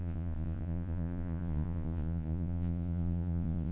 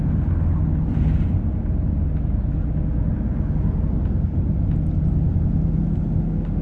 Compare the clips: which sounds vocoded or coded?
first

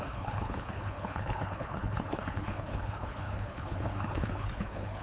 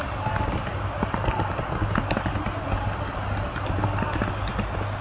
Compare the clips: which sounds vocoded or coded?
first